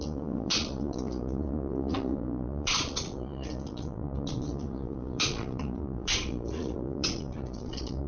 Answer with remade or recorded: remade